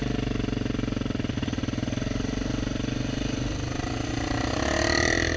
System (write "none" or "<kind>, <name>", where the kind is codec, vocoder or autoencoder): none